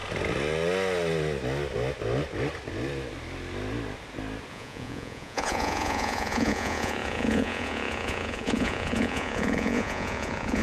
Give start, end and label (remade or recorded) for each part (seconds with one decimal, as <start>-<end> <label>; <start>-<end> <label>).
0.0-4.5 recorded; 4.5-10.6 remade